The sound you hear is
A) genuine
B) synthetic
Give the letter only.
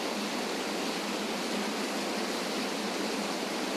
A